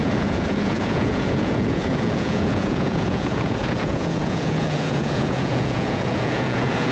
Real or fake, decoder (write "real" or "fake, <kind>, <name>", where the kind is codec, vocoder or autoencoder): fake, vocoder, Vocos